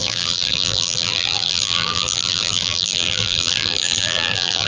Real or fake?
fake